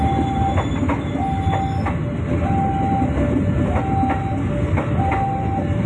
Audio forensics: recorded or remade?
recorded